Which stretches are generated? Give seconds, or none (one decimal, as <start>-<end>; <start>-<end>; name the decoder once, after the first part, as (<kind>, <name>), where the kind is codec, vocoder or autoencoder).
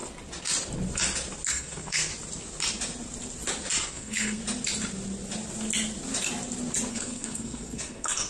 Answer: 1.5-2.1 (codec, SNAC); 3.9-4.4; 6.9-8.3